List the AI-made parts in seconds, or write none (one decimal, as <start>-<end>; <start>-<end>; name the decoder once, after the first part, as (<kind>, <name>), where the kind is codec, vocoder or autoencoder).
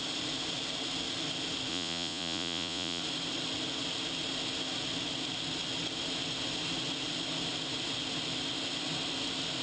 1.7-3.0 (vocoder, Vocos)